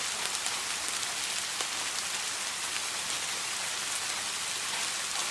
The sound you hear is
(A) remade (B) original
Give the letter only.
B